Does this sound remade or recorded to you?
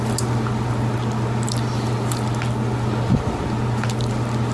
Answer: recorded